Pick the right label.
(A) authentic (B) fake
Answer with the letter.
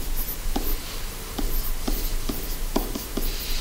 A